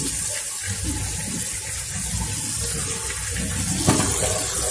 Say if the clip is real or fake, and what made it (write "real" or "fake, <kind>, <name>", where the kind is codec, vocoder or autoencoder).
real